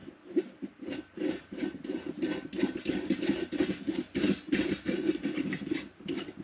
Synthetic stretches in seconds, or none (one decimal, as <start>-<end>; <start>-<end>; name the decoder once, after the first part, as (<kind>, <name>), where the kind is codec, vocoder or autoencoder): none